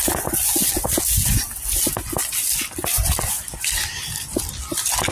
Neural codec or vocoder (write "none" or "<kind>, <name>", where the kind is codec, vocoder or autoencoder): none